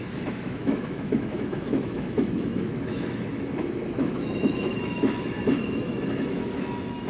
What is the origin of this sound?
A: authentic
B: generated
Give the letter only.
B